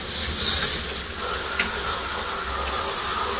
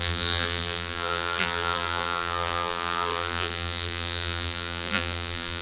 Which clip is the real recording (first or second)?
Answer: first